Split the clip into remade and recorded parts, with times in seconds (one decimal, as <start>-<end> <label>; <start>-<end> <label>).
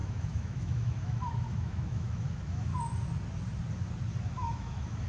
0.0-2.7 remade; 2.7-4.2 recorded; 4.2-5.1 remade